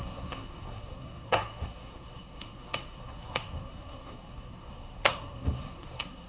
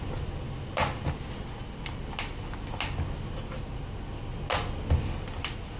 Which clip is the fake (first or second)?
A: first